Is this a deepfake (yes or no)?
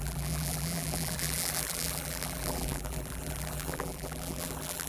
yes